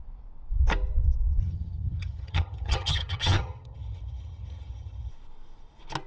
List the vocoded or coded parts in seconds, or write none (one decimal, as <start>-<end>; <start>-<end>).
1.4-5.1